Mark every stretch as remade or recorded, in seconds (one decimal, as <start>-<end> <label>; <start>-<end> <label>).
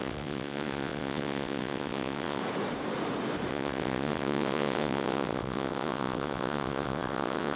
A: 0.0-2.4 remade; 2.4-3.5 recorded; 3.5-7.6 remade